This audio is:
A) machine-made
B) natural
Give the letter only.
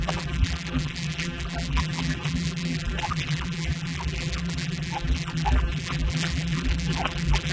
A